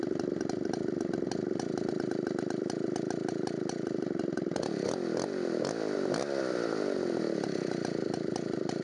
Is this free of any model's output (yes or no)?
yes